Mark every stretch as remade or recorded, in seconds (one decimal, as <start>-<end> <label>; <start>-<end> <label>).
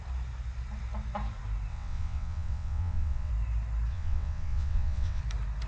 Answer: 0.0-1.7 recorded; 1.7-3.3 remade; 3.3-3.9 recorded; 3.9-5.2 remade; 5.2-5.7 recorded